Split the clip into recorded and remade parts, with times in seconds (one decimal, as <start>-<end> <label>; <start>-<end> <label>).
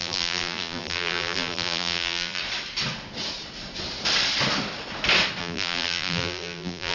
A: 0.0-2.4 remade; 2.4-5.4 recorded; 5.4-6.9 remade